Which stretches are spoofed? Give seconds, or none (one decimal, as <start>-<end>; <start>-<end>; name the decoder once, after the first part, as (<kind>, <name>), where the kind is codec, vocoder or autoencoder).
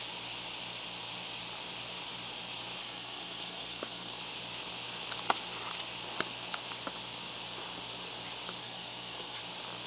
2.8-4.2 (codec, SNAC); 8.6-9.4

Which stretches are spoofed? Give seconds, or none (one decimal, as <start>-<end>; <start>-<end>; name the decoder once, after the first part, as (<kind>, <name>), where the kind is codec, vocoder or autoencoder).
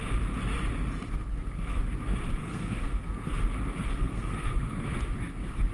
1.3-1.8 (codec, SNAC); 2.4-3.3; 3.8-4.9